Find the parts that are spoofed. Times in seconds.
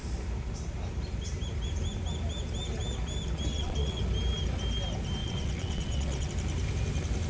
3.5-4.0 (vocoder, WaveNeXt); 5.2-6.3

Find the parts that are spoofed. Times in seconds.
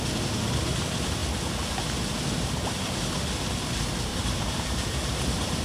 4.1-5.6 (vocoder, BigVGAN v2)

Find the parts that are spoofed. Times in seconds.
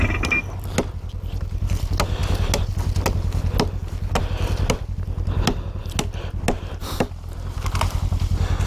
none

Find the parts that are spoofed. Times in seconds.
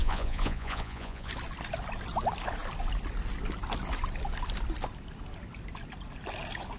0.0-1.3 (vocoder, Vocos)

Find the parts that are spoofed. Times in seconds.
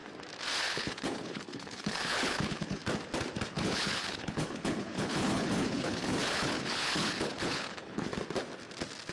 0.6-2.8 (codec, HILCodec); 3.5-8.1